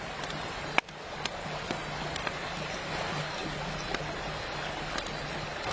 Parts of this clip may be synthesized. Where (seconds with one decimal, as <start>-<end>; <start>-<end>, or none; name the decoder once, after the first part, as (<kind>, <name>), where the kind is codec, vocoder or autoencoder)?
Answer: none